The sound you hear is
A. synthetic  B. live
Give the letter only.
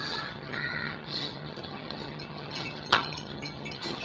A